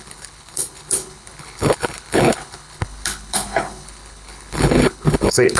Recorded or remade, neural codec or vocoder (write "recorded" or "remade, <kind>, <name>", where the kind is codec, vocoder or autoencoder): remade, codec, HILCodec